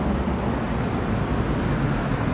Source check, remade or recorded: recorded